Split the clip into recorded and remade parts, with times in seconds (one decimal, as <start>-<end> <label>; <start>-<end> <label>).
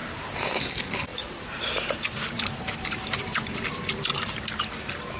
0.0-0.6 remade; 0.6-1.1 recorded; 1.1-3.8 remade; 3.8-5.2 recorded